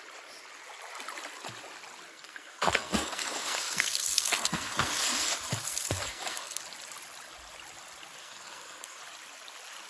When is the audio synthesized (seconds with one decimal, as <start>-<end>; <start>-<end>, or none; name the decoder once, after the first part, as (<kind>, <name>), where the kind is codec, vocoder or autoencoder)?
2.1-6.6 (codec, SNAC); 8.2-9.0